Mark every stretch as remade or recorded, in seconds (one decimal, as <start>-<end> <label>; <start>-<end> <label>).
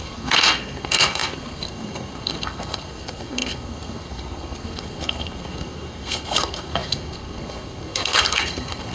0.0-8.9 remade